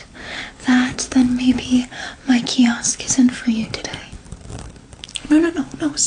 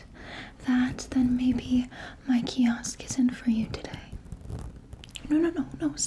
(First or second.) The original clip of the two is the second